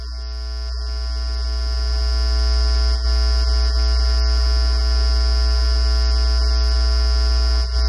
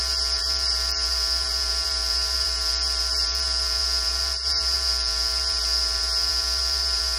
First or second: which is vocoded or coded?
second